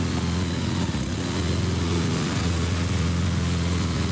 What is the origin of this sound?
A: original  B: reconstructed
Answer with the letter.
B